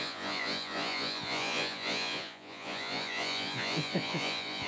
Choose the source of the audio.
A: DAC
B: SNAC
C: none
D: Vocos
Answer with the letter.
D